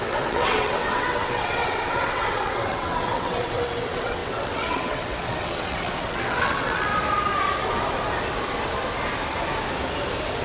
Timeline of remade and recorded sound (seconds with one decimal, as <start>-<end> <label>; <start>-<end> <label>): 0.0-6.9 remade; 6.9-10.4 recorded